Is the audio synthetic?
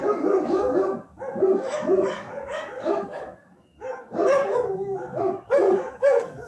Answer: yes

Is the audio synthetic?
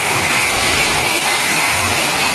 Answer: yes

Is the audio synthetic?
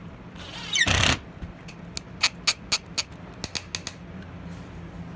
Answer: no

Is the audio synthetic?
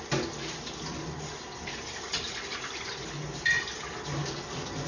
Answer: no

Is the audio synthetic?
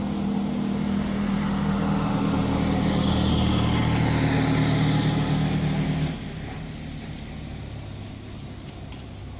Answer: no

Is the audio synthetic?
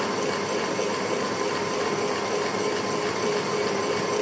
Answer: no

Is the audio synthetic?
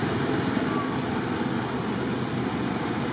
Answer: no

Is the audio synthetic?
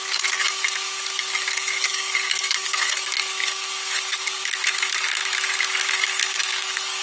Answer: yes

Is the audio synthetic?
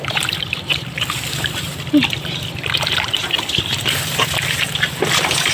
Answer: no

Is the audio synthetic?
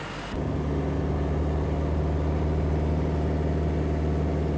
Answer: no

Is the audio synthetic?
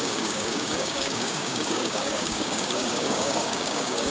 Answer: yes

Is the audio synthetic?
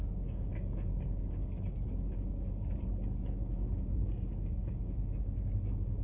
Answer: yes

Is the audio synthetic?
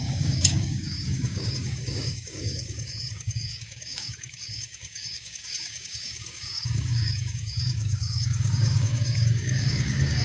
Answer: yes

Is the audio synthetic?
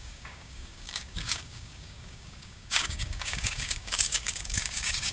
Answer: yes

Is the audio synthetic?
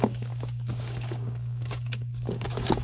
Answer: yes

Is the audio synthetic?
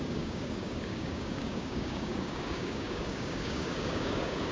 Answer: yes